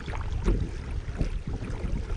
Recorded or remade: recorded